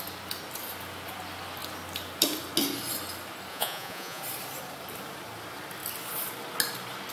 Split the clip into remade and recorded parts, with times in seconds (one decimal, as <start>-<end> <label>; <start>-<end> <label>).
0.0-3.5 recorded; 3.5-4.2 remade; 4.2-7.1 recorded